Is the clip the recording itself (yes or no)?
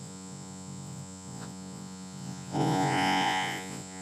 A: no